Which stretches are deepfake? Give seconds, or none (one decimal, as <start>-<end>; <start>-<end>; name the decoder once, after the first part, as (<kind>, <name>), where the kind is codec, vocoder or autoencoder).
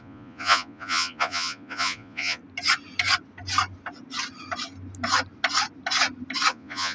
0.0-2.4 (vocoder, Vocos); 6.5-6.9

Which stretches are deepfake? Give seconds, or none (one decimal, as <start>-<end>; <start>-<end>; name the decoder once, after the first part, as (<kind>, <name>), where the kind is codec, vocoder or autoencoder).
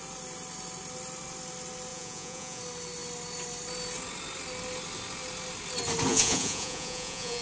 1.9-2.6 (vocoder, Vocos); 6.1-7.4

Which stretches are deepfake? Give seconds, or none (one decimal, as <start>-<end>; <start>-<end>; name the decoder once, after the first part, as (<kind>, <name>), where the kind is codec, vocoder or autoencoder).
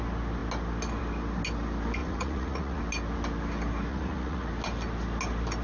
2.0-2.8 (vocoder, Vocos); 3.9-4.5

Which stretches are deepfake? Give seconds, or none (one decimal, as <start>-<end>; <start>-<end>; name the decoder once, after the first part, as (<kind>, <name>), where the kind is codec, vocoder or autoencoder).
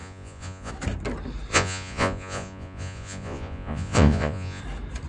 0.0-0.7 (vocoder, Vocos); 1.5-4.6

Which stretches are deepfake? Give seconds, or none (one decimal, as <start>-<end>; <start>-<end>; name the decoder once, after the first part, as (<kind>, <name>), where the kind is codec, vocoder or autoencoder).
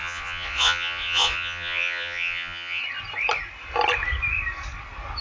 0.0-2.8 (vocoder, Vocos)